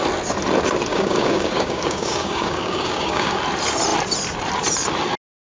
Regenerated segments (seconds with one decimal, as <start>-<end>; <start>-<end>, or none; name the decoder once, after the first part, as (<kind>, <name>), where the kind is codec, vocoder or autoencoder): 0.9-3.4 (codec, DAC)